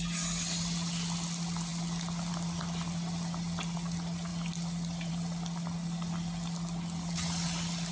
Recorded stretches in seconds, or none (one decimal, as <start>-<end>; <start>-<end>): 0.0-7.9